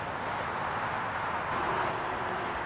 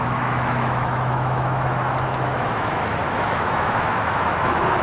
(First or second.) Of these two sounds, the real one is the first